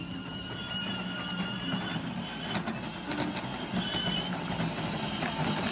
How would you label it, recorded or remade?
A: recorded